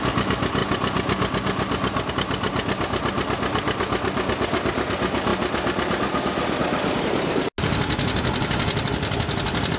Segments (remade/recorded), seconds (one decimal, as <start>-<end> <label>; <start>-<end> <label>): 0.0-9.8 recorded